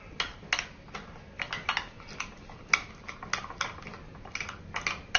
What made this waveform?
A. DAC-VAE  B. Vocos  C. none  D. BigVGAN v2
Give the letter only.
C